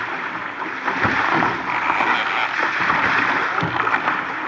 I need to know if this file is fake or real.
real